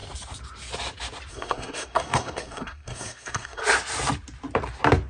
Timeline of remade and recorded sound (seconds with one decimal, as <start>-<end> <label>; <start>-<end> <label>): 0.0-1.3 recorded; 1.3-3.6 remade; 3.6-5.1 recorded